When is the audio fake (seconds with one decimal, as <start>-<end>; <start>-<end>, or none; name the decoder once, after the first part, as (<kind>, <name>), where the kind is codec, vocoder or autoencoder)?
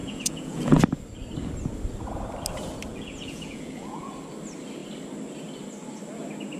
0.0-0.8 (vocoder, Vocos); 2.9-4.1